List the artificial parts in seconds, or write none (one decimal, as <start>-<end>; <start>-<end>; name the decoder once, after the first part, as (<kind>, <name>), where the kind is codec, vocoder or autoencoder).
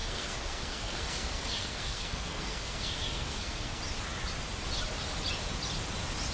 0.0-3.8 (codec, SNAC)